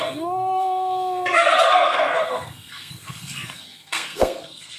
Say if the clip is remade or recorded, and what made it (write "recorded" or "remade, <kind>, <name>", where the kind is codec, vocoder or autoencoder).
remade, codec, SNAC